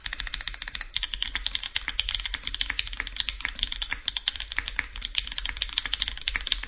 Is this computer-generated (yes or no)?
no